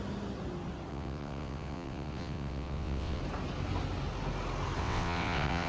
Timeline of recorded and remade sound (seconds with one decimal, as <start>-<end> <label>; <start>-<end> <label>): 0.0-0.9 recorded; 0.9-3.2 remade; 3.2-4.8 recorded; 4.8-5.7 remade